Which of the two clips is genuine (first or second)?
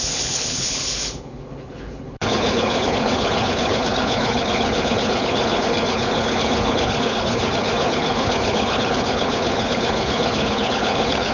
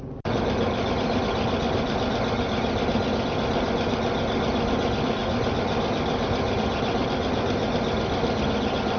second